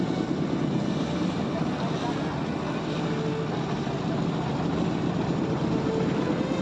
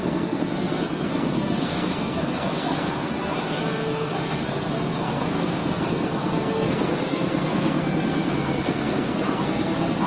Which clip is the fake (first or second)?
second